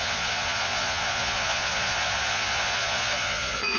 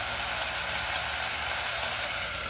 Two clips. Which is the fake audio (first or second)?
first